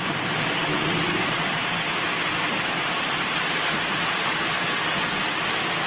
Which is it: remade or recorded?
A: recorded